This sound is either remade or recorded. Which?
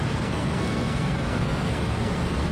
remade